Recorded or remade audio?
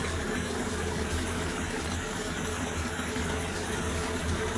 remade